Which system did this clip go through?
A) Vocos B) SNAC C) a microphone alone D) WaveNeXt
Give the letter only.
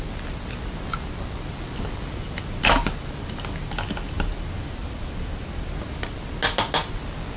C